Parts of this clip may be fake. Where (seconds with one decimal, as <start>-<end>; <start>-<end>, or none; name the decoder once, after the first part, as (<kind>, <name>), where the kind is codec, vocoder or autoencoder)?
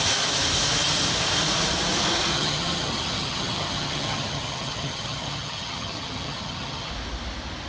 2.3-6.9 (vocoder, HiFi-GAN)